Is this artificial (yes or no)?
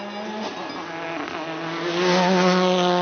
no